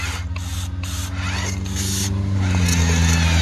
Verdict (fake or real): real